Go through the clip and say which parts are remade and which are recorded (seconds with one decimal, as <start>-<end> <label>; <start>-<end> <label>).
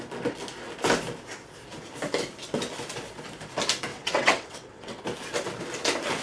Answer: 0.0-3.9 recorded; 3.9-5.0 remade; 5.0-6.2 recorded